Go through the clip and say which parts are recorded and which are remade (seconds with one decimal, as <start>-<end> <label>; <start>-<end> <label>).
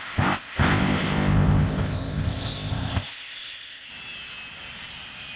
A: 0.0-3.9 remade; 3.9-5.4 recorded